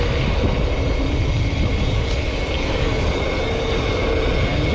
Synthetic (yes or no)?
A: no